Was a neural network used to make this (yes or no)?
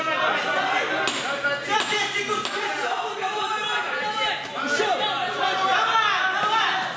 no